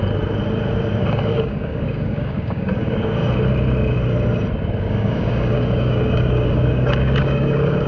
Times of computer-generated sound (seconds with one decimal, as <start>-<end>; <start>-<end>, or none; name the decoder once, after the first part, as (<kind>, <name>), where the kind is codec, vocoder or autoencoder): 1.0-3.2 (codec, DAC); 4.8-7.9